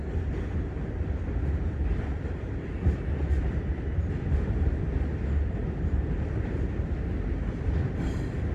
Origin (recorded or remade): recorded